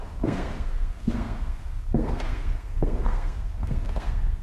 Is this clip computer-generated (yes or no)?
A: yes